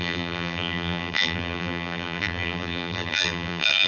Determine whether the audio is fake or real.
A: fake